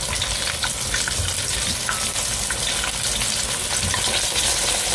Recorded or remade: recorded